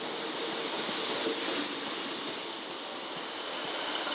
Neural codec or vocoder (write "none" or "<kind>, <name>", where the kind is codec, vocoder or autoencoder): none